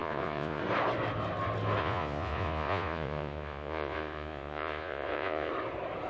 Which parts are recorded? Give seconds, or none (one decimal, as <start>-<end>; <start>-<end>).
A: 0.6-1.8; 5.5-6.1